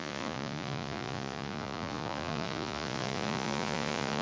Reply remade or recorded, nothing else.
remade